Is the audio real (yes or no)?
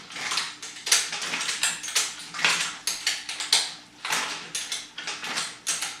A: yes